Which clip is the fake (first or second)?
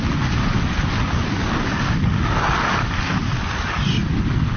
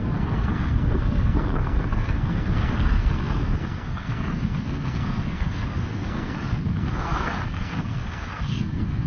second